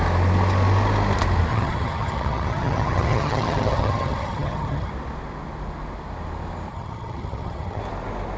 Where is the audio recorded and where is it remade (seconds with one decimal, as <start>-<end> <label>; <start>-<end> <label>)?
0.0-1.5 recorded; 1.5-4.9 remade; 4.9-6.7 recorded; 6.7-7.8 remade; 7.8-8.4 recorded